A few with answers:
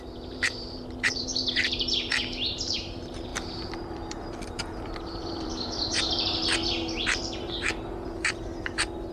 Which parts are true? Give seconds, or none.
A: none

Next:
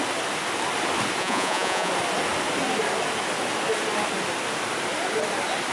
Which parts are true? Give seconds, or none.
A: 0.0-1.2; 1.9-5.7

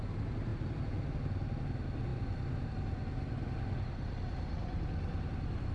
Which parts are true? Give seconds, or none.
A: 0.0-5.7

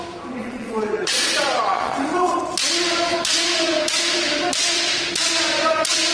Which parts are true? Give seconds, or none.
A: 0.0-0.4; 2.4-6.1